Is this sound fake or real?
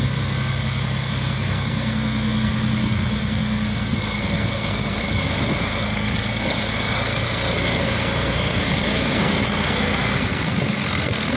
fake